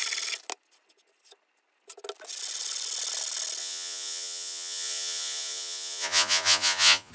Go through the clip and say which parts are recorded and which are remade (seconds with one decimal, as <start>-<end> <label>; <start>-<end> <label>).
0.0-3.6 recorded; 3.6-7.1 remade